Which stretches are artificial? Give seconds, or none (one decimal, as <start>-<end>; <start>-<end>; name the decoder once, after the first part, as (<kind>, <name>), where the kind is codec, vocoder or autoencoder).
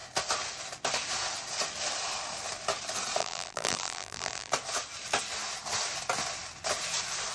3.2-4.5 (vocoder, BigVGAN v2)